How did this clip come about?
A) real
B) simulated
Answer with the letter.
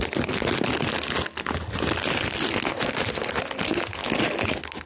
A